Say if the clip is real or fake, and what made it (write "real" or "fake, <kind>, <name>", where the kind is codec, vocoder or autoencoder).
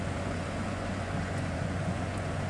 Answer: fake, vocoder, Vocos